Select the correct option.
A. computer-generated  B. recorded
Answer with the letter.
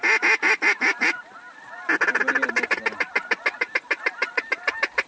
B